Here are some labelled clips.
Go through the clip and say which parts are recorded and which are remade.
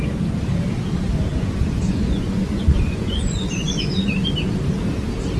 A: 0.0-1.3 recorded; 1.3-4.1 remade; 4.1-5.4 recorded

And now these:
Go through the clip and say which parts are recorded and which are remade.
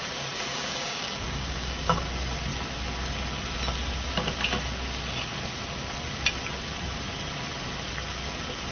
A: 0.0-0.5 recorded; 0.5-2.0 remade; 2.0-8.7 recorded